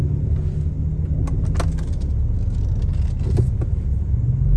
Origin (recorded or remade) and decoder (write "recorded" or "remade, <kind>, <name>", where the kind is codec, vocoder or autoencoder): recorded